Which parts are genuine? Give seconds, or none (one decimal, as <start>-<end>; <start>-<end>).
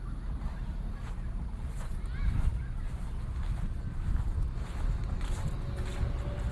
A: 0.0-6.5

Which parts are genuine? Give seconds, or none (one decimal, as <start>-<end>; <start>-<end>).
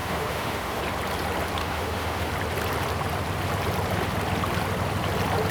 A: 0.8-1.6; 2.3-5.5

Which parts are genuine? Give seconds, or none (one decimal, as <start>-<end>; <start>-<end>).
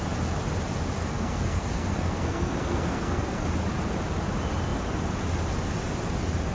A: 0.0-1.0; 3.5-6.5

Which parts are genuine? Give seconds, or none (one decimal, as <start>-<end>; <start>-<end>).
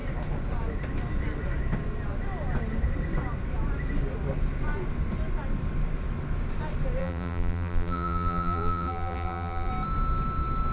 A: 0.0-7.0; 9.7-10.7